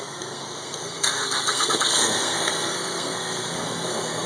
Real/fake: fake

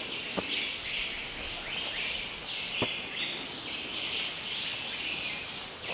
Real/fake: real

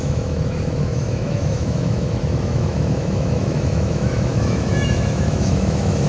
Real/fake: fake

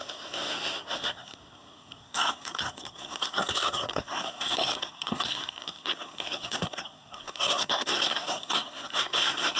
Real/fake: fake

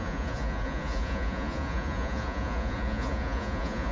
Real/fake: fake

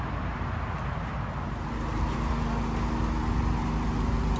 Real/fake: real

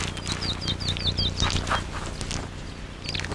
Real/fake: real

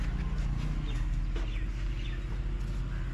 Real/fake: real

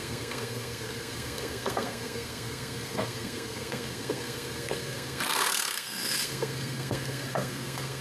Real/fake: fake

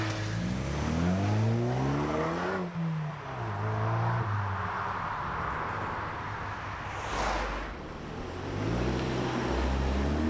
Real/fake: real